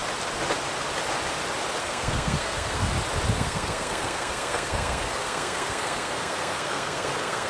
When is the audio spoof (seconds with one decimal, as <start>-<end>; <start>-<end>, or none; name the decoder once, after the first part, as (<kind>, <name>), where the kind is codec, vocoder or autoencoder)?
1.8-2.8 (codec, SNAC); 3.3-7.5